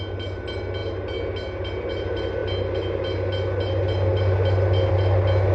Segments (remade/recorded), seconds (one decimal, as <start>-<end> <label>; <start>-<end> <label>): 0.0-5.5 recorded